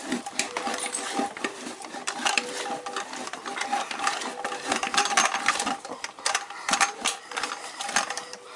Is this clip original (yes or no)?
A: no